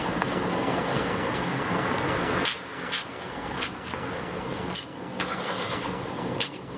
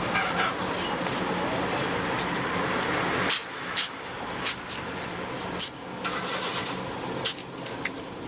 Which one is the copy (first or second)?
first